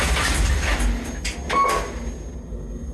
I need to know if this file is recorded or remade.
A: recorded